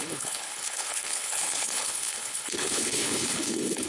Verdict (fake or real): fake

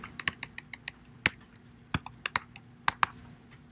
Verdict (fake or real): real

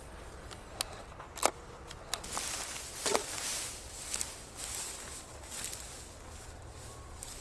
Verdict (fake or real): real